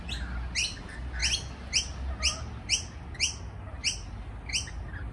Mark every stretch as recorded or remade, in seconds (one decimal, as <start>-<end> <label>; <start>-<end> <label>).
0.0-5.1 recorded